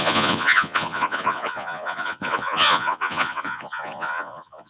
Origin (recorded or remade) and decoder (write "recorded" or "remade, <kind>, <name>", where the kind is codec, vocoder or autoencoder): remade, vocoder, Vocos